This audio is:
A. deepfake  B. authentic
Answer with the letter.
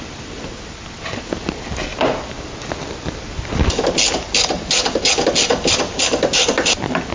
B